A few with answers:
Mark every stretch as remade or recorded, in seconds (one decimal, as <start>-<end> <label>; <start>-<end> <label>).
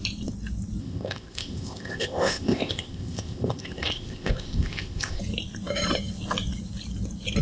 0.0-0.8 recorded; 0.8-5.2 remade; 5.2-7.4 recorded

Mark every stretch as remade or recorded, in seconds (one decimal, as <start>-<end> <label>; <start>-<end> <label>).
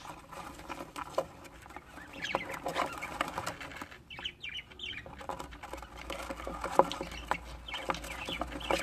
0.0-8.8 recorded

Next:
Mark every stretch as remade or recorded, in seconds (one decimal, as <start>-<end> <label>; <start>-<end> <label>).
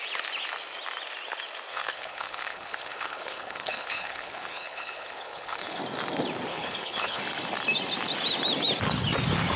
0.0-1.7 recorded; 1.7-5.8 remade; 5.8-6.5 recorded; 6.5-7.2 remade; 7.2-9.6 recorded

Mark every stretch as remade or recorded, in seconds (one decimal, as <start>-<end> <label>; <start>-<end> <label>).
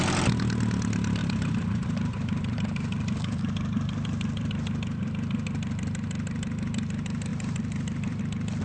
0.0-1.2 recorded; 1.2-4.5 remade; 4.5-7.3 recorded; 7.3-8.2 remade; 8.2-8.6 recorded